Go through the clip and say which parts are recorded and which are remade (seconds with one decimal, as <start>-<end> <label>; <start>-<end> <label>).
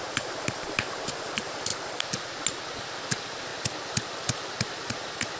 0.0-5.4 recorded